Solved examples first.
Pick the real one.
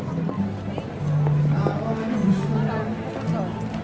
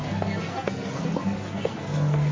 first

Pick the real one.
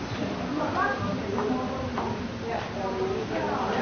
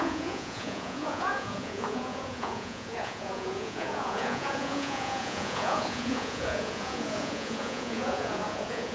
first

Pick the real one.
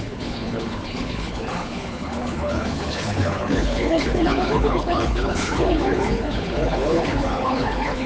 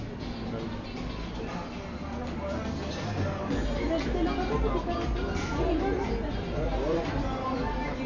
second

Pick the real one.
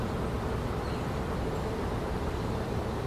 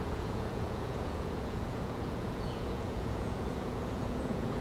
first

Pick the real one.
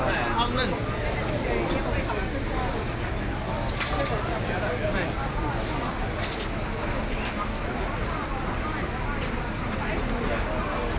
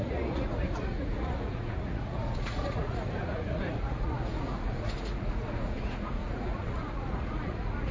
first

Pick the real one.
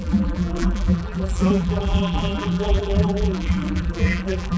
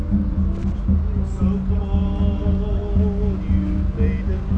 second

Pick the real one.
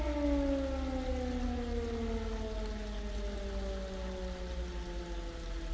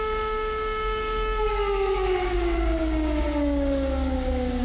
first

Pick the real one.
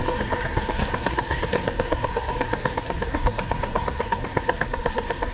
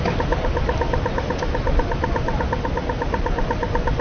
second